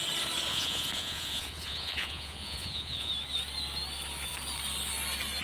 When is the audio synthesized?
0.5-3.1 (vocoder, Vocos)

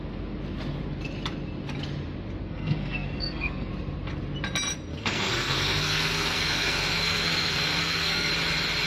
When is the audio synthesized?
2.4-3.7 (codec, SNAC); 4.9-8.3